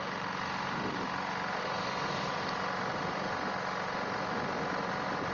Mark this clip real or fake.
real